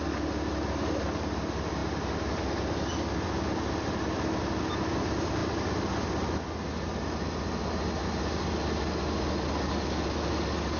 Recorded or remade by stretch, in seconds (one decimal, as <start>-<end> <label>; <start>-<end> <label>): 0.0-10.8 recorded

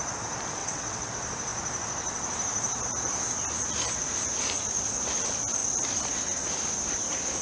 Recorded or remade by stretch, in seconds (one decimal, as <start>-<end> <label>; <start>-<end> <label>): 0.0-0.6 recorded; 0.6-1.1 remade; 1.1-7.4 recorded